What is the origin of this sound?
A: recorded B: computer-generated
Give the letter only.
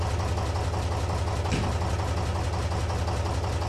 A